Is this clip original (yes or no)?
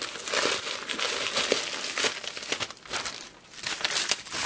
yes